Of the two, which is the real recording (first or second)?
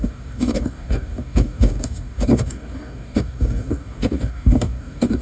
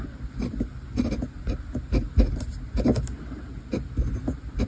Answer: second